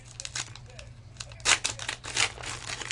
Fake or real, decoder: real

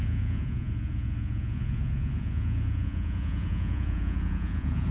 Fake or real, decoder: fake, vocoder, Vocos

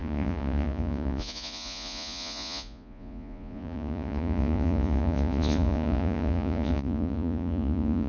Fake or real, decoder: fake, vocoder, Vocos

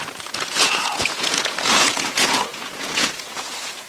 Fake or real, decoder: fake, vocoder, Vocos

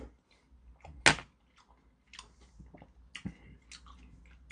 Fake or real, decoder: real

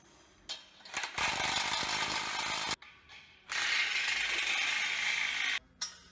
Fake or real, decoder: real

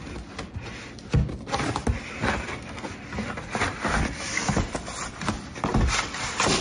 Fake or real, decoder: real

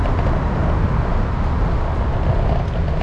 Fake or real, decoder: real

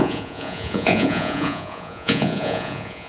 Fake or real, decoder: fake, vocoder, Vocos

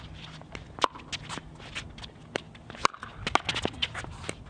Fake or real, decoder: real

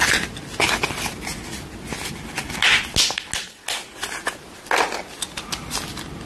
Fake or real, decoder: real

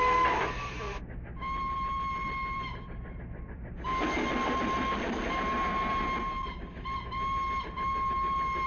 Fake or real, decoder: real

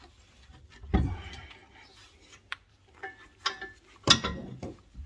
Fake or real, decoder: real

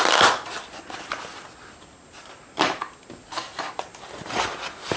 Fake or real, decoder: real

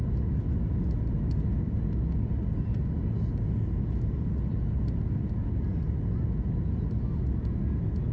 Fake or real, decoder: real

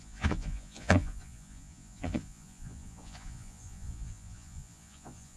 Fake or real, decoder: fake, vocoder, Vocos